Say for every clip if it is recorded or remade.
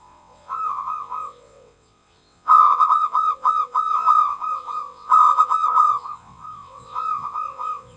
remade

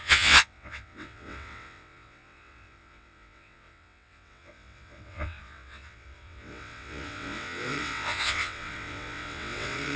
remade